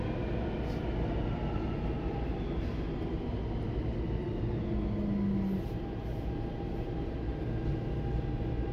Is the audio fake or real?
real